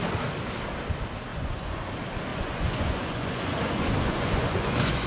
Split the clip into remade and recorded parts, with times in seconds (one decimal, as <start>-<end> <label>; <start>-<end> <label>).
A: 0.0-1.3 recorded; 1.3-1.9 remade; 1.9-2.3 recorded; 2.3-5.1 remade